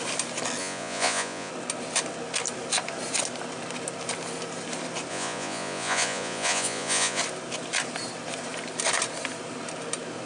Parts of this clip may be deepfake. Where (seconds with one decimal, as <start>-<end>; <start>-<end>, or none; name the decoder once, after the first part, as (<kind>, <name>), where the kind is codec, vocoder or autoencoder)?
0.6-1.5 (vocoder, Vocos); 5.1-7.2